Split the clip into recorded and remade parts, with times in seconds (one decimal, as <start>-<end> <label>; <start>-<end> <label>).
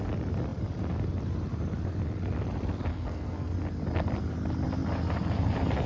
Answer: 0.0-2.9 recorded; 2.9-3.5 remade; 3.5-5.9 recorded